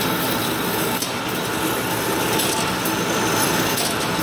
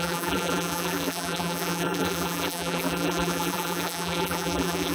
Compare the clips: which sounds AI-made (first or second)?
second